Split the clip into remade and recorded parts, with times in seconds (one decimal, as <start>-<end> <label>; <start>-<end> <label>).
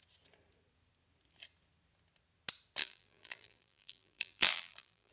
0.0-2.8 recorded; 2.8-5.1 remade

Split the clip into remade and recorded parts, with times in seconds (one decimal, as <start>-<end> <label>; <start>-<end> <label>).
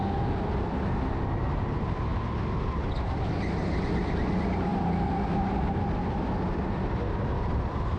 0.0-8.0 recorded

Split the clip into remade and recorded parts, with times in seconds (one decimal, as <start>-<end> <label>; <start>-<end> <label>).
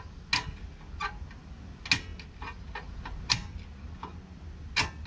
0.0-5.1 recorded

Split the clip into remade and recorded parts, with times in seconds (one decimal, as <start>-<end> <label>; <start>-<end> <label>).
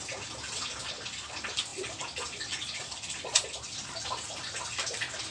0.0-5.3 recorded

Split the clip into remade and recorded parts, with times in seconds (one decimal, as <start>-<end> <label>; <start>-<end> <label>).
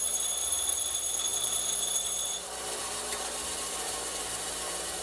0.0-5.0 remade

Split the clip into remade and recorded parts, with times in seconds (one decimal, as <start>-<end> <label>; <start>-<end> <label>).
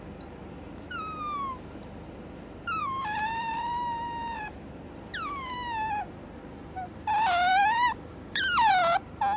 0.0-2.8 recorded; 2.8-4.5 remade; 4.5-7.5 recorded; 7.5-8.7 remade; 8.7-9.4 recorded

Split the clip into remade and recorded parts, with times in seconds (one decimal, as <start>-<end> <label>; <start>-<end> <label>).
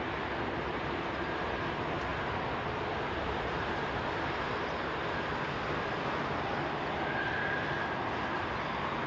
0.0-9.1 recorded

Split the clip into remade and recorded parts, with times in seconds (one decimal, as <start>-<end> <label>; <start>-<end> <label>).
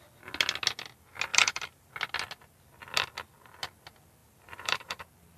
0.0-1.3 recorded; 1.3-1.9 remade; 1.9-4.2 recorded; 4.2-5.0 remade; 5.0-5.4 recorded